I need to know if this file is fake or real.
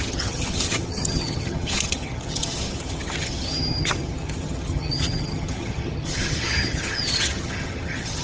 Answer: fake